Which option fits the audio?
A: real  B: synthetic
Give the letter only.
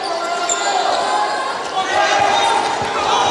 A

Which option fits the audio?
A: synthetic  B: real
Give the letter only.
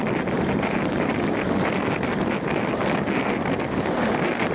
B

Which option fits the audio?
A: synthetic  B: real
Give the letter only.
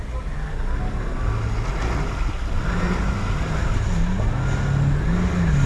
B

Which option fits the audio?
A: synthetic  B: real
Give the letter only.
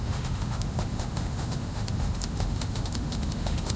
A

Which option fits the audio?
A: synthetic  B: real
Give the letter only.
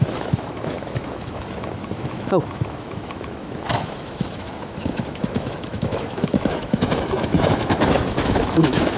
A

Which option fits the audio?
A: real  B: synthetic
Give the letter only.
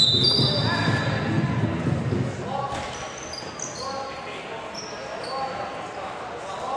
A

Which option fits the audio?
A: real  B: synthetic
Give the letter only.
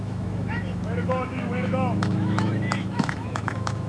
B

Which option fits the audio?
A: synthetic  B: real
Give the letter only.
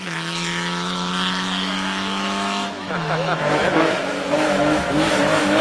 A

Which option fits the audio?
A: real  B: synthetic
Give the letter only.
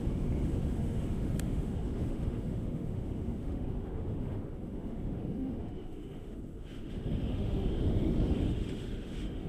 B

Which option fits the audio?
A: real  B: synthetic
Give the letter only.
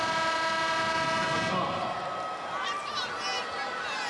A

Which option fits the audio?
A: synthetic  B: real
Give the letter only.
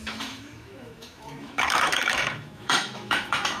A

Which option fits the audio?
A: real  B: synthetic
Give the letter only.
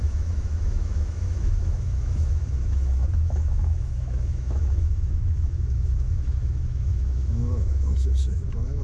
B